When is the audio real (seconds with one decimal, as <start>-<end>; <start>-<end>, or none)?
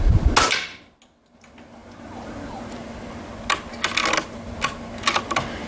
0.0-5.7